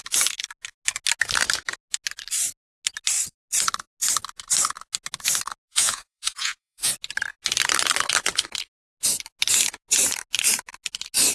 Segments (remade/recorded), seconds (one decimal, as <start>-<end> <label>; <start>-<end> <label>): 0.0-5.7 recorded; 5.7-6.9 remade; 6.9-11.3 recorded